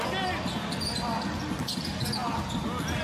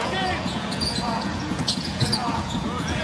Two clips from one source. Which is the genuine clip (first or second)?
first